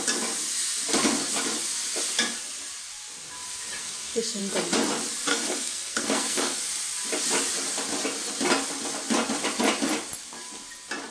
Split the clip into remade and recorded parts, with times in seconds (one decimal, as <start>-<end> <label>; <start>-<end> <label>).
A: 0.0-3.8 recorded; 3.8-4.4 remade; 4.4-5.3 recorded; 5.3-6.6 remade; 6.6-11.1 recorded